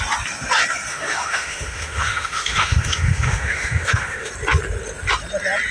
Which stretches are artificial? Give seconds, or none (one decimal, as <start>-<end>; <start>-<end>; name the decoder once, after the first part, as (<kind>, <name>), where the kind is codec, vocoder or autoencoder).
0.9-4.3 (autoencoder, DAC-VAE)